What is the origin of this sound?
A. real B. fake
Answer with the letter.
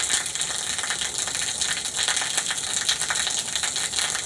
A